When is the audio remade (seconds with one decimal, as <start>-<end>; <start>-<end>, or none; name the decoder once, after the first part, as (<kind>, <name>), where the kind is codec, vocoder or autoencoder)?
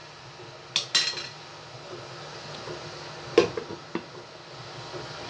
none